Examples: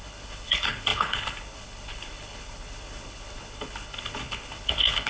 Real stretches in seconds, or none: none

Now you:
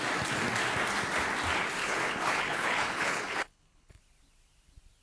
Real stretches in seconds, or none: 0.0-1.8; 4.0-5.0

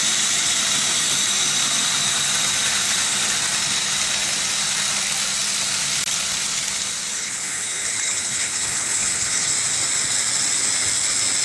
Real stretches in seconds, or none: 0.0-7.1; 9.5-11.4

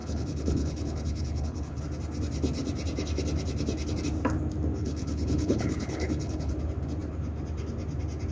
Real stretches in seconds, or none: 1.8-4.8; 6.5-8.3

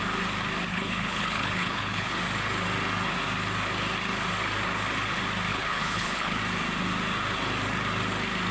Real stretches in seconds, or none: 0.0-0.7; 2.1-5.5; 6.4-8.5

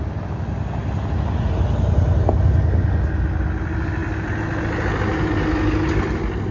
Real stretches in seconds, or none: 0.0-6.5